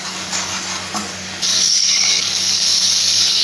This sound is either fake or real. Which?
fake